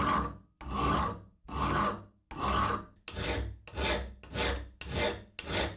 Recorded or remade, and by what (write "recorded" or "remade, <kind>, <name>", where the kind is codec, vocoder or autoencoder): recorded